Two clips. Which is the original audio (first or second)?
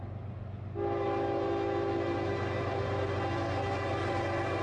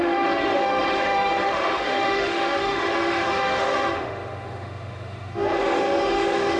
first